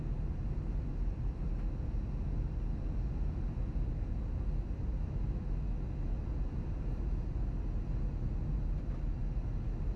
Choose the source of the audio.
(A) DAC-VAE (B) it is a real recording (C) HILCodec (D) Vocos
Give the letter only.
B